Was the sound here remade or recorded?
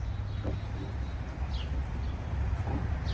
recorded